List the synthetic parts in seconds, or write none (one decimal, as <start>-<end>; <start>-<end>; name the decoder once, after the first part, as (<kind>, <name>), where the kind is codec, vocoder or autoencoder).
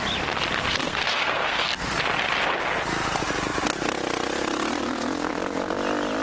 0.8-1.9 (codec, SNAC)